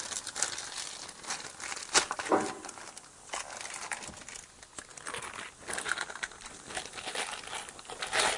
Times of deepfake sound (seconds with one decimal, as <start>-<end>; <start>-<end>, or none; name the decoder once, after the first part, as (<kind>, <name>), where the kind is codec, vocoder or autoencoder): none